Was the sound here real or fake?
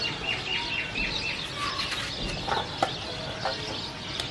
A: real